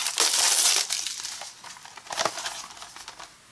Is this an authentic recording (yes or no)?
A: yes